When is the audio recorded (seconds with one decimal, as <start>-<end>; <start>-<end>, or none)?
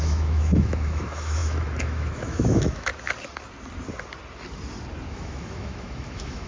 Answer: 2.9-5.1